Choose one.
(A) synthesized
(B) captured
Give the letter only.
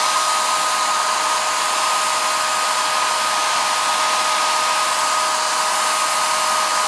B